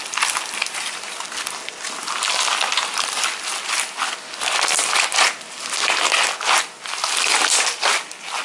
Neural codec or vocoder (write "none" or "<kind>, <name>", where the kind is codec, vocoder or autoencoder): none